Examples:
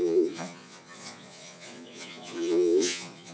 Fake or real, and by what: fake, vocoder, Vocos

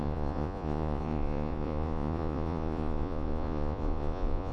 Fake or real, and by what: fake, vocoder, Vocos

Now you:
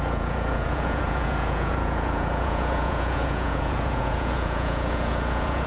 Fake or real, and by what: fake, vocoder, Vocos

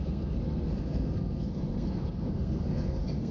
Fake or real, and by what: fake, codec, SNAC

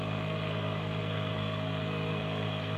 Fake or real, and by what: fake, codec, SNAC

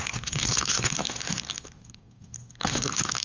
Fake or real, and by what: fake, codec, SNAC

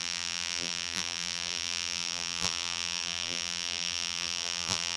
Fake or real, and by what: fake, vocoder, BigVGAN v2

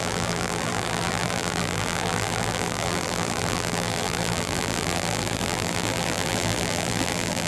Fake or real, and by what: fake, vocoder, BigVGAN v2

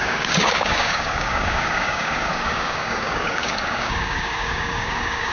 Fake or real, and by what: fake, codec, DAC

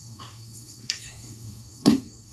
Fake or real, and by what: fake, codec, SNAC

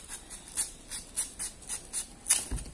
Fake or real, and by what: real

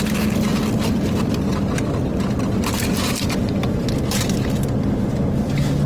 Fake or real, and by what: real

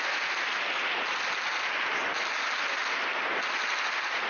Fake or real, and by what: real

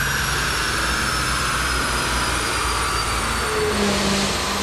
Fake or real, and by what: real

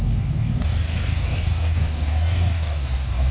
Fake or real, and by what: fake, codec, DAC